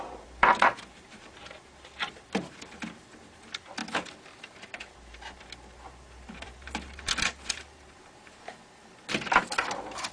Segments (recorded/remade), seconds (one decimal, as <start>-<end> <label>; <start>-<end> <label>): 0.0-3.8 remade; 3.8-4.5 recorded; 4.5-8.6 remade; 8.6-9.4 recorded; 9.4-10.1 remade